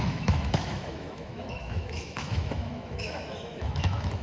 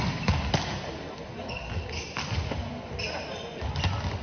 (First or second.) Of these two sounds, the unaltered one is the second